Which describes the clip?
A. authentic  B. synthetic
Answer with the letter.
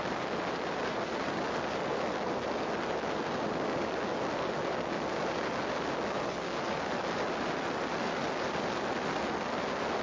A